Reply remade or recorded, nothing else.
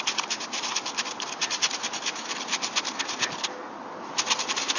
recorded